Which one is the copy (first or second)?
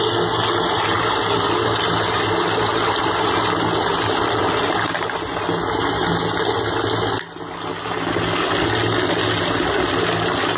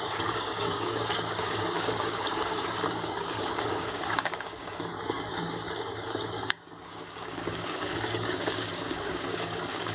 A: second